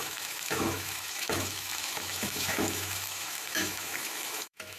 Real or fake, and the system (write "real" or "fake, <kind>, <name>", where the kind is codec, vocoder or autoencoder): fake, autoencoder, DAC-VAE